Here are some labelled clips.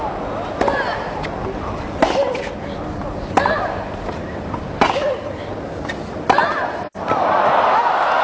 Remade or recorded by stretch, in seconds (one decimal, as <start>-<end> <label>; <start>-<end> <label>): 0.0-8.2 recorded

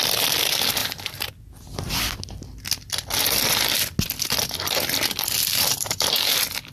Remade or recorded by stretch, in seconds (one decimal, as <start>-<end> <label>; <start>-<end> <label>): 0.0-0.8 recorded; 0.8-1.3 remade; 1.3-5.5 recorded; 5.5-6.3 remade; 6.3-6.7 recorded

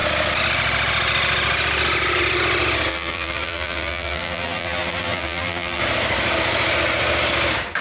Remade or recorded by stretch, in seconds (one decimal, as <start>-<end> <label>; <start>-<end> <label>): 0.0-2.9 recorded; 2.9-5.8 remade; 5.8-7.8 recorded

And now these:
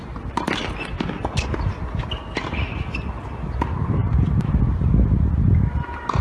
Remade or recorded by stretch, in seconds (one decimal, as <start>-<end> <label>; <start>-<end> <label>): 0.0-4.0 recorded; 4.0-4.5 remade; 4.5-6.2 recorded

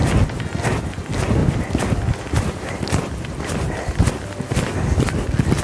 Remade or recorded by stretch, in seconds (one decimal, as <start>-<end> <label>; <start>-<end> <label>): 0.0-1.4 recorded; 1.4-4.1 remade; 4.1-5.6 recorded

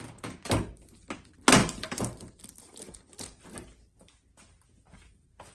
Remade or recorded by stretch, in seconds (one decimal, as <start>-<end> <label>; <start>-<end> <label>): 0.0-1.6 recorded; 1.6-3.2 remade; 3.2-5.5 recorded

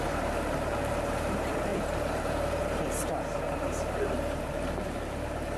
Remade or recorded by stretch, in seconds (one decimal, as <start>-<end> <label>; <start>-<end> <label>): 0.0-5.6 remade

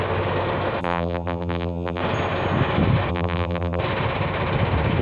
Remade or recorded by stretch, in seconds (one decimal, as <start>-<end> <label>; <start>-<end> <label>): 0.0-0.8 recorded; 0.8-2.0 remade; 2.0-3.1 recorded; 3.1-3.8 remade; 3.8-5.0 recorded